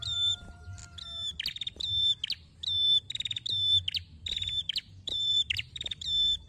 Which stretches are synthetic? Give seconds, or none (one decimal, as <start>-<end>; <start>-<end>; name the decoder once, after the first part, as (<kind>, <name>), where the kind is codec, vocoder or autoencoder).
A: 0.0-0.8 (vocoder, BigVGAN v2); 4.6-6.5